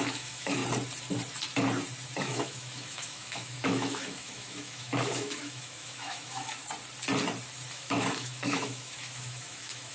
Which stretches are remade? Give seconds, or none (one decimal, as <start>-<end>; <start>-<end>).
0.0-0.6; 2.2-6.6; 7.7-9.9